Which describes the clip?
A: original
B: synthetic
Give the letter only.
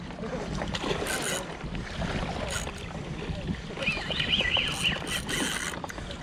A